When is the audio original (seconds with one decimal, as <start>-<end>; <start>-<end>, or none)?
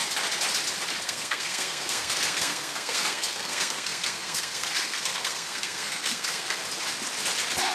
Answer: 0.0-1.0; 6.6-7.7